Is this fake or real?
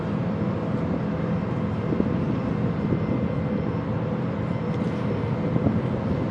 real